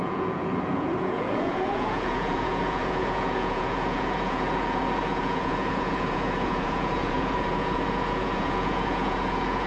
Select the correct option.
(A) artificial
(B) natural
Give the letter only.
A